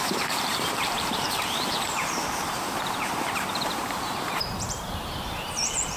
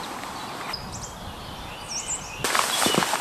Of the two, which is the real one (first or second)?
second